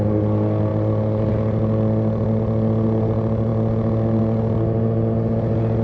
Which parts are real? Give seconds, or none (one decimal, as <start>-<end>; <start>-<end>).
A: 0.0-5.8